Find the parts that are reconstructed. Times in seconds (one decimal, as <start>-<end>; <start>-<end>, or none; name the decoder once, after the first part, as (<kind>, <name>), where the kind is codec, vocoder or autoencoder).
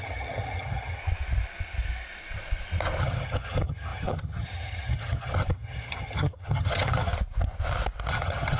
0.0-1.0 (vocoder, HiFi-GAN); 3.0-7.1; 8.1-8.6